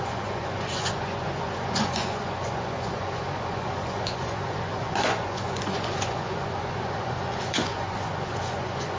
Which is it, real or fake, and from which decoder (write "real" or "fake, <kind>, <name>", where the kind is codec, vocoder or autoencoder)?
fake, vocoder, Vocos